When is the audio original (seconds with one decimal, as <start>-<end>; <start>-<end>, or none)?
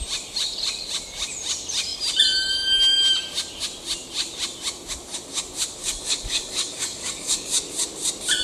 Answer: 0.0-5.8; 7.5-8.4